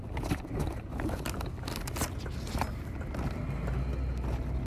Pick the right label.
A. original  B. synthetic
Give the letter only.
A